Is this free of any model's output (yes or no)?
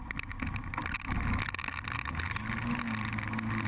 yes